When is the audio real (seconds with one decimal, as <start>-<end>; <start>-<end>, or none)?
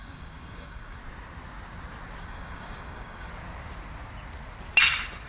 1.0-2.2; 3.3-5.3